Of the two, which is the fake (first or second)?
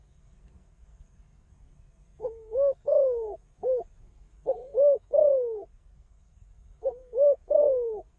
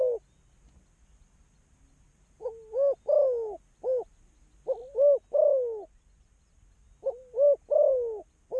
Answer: first